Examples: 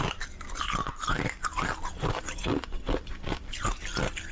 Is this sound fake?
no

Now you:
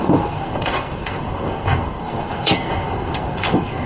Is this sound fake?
yes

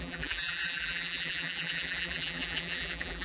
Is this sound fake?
yes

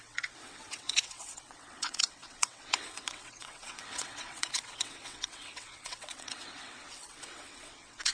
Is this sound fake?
yes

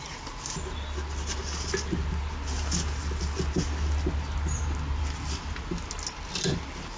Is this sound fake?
no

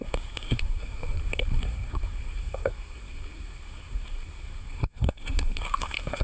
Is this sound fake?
yes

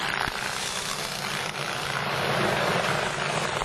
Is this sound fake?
no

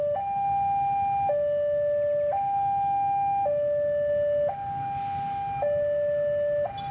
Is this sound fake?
no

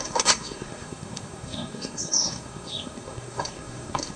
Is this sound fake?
yes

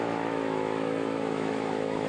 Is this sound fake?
yes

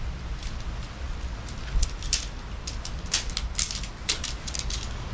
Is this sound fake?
no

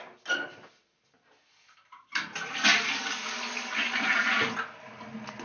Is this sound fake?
no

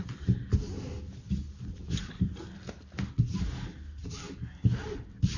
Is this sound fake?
no